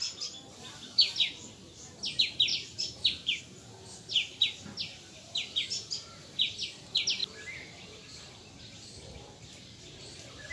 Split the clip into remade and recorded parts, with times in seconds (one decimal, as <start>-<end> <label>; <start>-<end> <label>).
0.0-2.5 recorded; 2.5-3.4 remade; 3.4-10.5 recorded